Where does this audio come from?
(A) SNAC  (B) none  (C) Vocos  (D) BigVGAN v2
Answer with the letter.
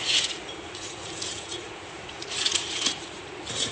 C